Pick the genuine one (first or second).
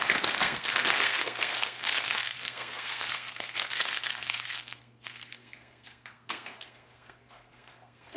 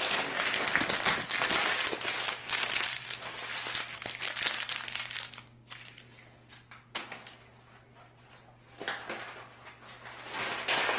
second